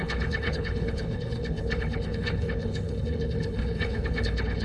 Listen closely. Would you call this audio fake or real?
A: fake